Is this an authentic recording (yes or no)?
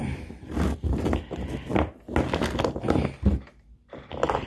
yes